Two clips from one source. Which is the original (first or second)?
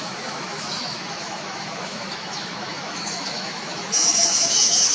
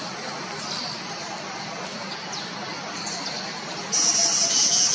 second